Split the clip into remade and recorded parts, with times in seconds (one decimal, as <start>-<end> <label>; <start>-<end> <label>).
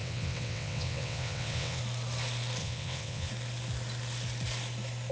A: 0.0-1.8 remade; 1.8-2.6 recorded; 2.6-3.3 remade; 3.3-5.1 recorded